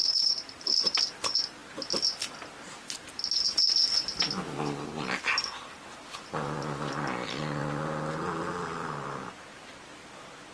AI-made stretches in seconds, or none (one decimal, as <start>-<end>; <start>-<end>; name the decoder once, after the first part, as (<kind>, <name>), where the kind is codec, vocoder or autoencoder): 0.0-1.0 (vocoder, BigVGAN v2)